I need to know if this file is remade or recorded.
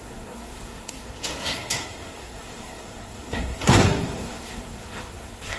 remade